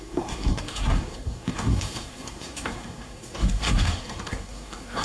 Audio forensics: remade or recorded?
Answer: remade